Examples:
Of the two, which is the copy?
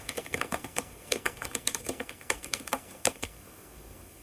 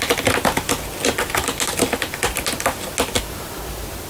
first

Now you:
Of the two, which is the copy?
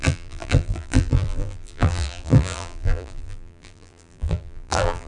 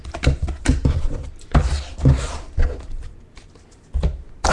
first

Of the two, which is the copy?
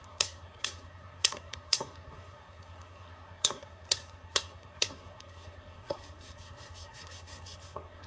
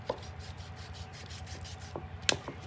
first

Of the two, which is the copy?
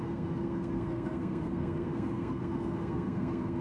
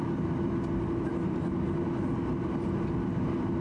first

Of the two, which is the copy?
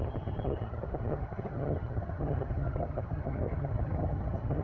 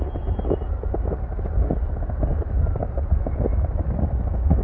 first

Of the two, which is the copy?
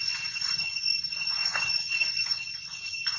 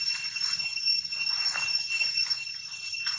first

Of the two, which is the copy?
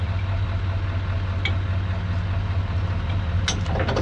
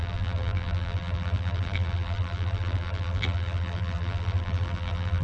second